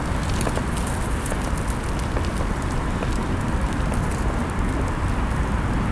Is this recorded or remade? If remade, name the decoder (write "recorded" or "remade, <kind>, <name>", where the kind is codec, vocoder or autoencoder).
recorded